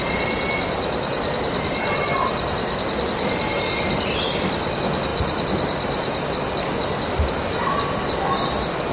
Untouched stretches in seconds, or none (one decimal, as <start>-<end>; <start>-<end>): 0.0-8.9